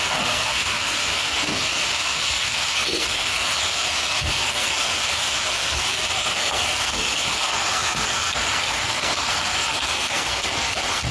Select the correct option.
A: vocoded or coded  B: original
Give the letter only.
A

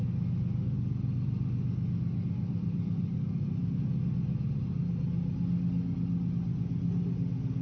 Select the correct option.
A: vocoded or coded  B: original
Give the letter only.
B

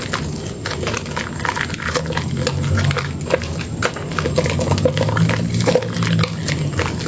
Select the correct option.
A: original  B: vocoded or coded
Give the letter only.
A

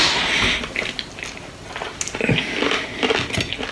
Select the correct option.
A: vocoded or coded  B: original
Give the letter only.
B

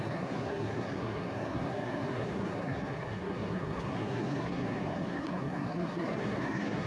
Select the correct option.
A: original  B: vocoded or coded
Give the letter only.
B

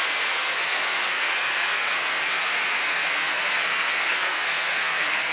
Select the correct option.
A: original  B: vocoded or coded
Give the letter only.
B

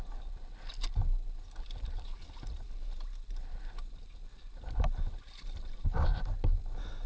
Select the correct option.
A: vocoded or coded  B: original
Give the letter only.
B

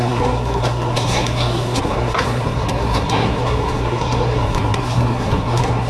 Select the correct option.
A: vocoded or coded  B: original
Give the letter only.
A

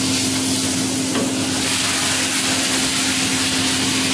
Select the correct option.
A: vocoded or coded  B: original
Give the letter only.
B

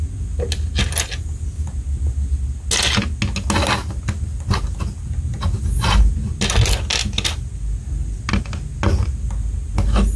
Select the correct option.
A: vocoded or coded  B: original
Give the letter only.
B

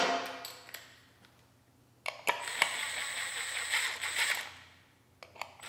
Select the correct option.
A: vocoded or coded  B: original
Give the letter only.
B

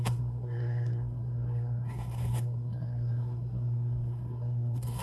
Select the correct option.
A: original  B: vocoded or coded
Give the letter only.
B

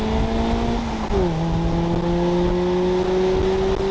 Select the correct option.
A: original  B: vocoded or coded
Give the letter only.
A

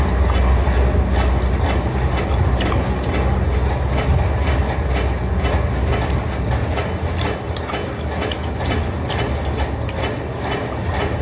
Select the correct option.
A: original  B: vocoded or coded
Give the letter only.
A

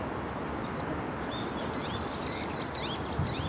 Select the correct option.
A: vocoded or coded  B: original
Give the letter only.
B